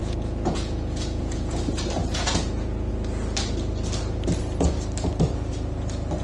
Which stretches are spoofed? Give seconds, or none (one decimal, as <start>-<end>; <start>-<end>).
0.0-1.6; 2.0-2.9